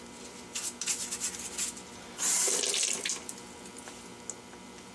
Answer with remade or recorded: recorded